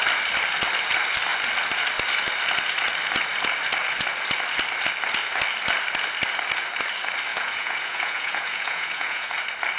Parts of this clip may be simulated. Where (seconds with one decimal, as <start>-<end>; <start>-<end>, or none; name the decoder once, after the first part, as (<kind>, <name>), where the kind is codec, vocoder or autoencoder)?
7.3-9.3 (vocoder, Vocos)